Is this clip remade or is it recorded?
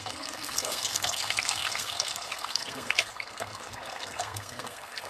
remade